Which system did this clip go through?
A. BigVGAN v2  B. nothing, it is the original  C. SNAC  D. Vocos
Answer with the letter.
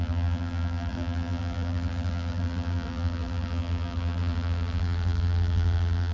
A